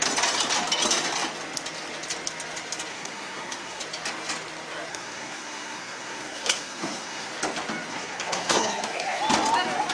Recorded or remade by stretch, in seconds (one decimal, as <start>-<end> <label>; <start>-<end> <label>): 0.0-2.9 recorded; 2.9-3.8 remade; 3.8-4.9 recorded; 4.9-7.3 remade; 7.3-7.9 recorded; 7.9-9.2 remade; 9.2-9.9 recorded

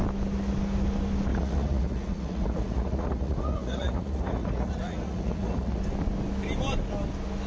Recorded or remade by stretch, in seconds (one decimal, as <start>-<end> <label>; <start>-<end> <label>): 0.0-1.3 recorded; 1.3-5.8 remade; 5.8-7.5 recorded

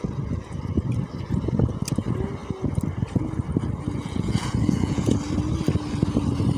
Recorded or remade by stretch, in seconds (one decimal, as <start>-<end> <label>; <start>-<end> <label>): 0.0-4.0 recorded; 4.0-5.1 remade; 5.1-6.6 recorded

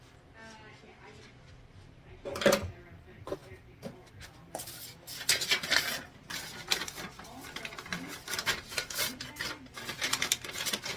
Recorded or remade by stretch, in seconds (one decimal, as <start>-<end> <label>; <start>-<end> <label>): 0.0-11.0 recorded

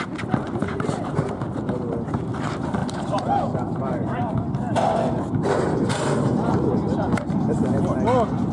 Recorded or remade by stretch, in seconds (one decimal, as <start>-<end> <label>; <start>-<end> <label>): 0.0-0.6 recorded; 0.6-1.5 remade; 1.5-2.8 recorded; 2.8-7.8 remade; 7.8-8.5 recorded

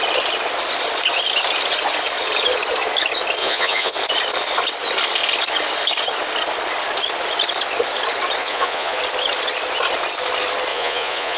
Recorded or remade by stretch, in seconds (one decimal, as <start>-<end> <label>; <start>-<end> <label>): 0.0-3.4 recorded; 3.4-3.9 remade; 3.9-8.4 recorded; 8.4-9.0 remade; 9.0-10.7 recorded; 10.7-11.4 remade

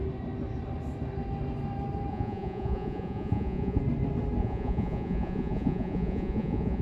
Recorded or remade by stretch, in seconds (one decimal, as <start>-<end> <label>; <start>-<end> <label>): 0.0-2.1 recorded; 2.1-3.8 remade; 3.8-4.4 recorded; 4.4-6.8 remade

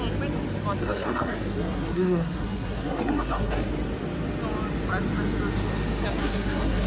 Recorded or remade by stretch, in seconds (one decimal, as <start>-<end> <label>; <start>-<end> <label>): 0.0-0.8 recorded; 0.8-3.7 remade; 3.7-6.2 recorded; 6.2-6.9 remade